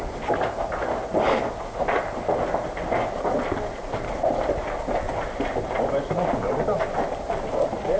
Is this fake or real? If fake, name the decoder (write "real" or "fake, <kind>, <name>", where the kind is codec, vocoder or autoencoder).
real